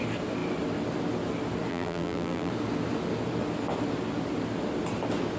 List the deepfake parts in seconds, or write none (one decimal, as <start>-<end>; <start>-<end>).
1.7-2.5